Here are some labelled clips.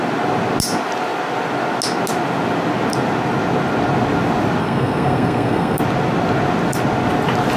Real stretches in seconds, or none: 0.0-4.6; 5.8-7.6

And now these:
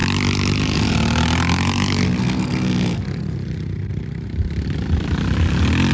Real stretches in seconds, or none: 0.0-2.2; 3.0-5.9

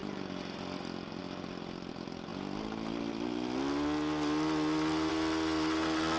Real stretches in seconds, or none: 0.0-6.2

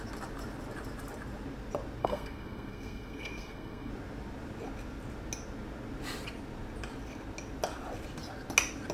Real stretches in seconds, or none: 0.0-2.0; 3.9-8.9

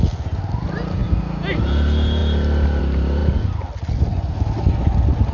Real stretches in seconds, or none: 0.0-5.3

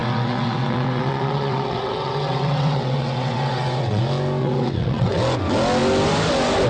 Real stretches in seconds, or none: 4.0-4.4; 5.2-6.7